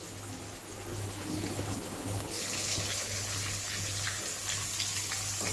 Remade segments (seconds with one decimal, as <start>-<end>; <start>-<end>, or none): 0.9-4.2